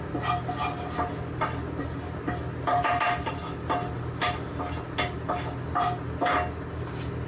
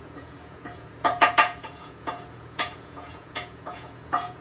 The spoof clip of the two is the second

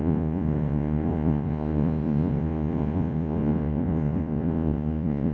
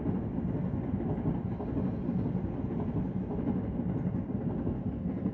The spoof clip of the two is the first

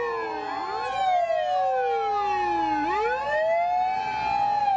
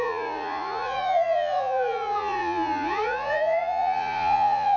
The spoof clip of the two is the second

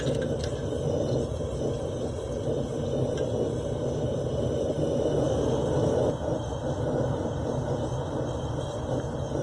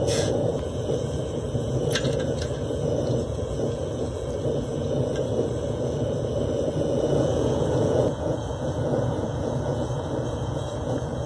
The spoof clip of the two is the second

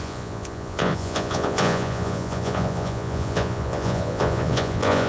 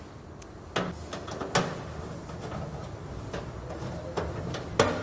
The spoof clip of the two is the first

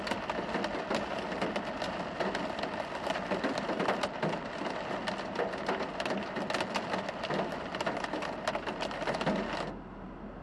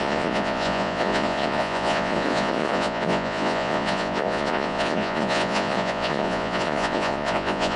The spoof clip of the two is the second